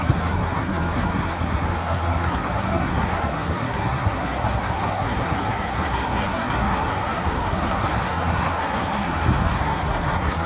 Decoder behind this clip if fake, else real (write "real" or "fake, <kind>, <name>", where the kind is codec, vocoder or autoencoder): fake, codec, SNAC